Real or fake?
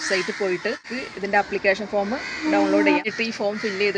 real